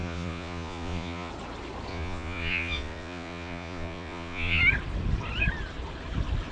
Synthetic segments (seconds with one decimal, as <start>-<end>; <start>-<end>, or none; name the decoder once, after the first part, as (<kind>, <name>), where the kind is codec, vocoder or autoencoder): 0.0-1.3 (vocoder, Vocos); 1.9-4.6